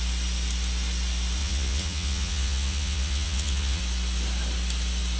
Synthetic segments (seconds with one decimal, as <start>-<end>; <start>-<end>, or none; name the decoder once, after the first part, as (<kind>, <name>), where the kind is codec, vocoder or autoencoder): 1.4-3.8 (vocoder, Vocos)